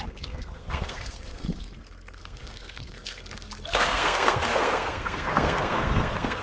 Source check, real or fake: fake